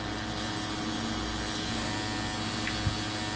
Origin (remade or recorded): recorded